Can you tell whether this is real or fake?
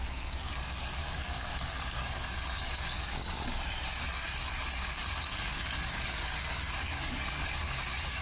fake